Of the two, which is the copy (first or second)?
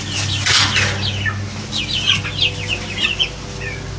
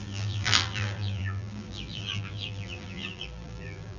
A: second